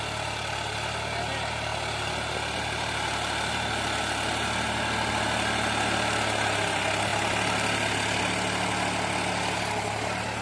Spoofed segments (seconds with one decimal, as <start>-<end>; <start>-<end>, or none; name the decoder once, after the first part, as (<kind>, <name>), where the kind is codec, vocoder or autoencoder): none